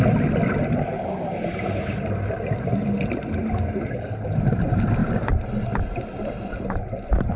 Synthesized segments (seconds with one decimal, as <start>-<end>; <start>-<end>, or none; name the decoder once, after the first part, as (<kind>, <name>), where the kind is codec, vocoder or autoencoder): none